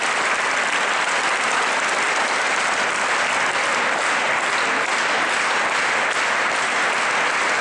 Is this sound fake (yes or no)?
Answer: no